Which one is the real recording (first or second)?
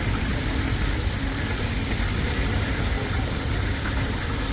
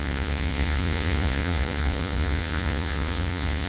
first